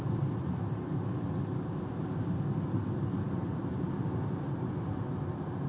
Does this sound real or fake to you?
real